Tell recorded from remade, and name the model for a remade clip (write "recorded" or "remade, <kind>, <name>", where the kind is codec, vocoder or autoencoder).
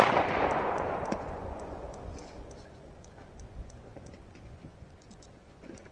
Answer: remade, vocoder, Vocos